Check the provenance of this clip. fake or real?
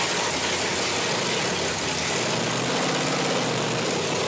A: real